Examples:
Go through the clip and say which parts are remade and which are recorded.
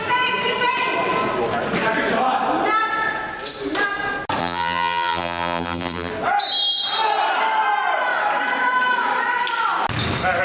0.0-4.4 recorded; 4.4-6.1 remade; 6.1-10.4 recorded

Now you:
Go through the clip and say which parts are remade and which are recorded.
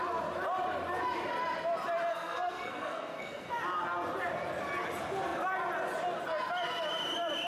0.0-2.1 recorded; 2.1-3.5 remade; 3.5-7.5 recorded